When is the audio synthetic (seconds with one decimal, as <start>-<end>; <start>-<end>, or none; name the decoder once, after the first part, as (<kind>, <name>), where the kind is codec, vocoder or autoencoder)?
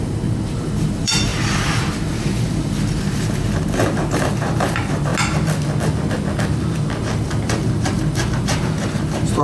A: 0.0-5.1 (vocoder, BigVGAN v2); 7.0-9.4